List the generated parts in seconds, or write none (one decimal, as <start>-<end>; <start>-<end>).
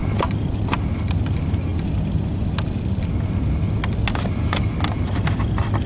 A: none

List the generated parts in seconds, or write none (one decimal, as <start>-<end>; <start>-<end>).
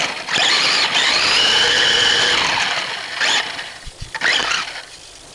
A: 0.0-1.1; 2.6-4.4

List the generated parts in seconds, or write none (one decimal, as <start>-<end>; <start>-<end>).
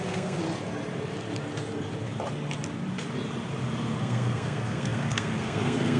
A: 0.0-0.4; 4.0-6.0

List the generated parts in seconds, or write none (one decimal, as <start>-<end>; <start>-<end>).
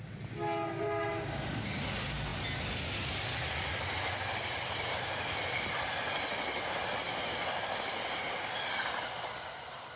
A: none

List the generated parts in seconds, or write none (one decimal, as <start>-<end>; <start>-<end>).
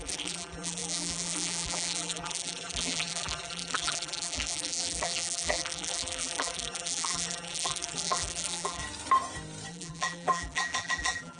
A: 0.0-8.8; 9.7-11.4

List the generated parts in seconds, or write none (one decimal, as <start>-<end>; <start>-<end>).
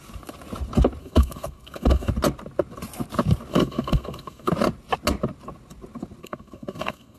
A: 1.0-2.1; 3.5-4.5; 6.2-7.2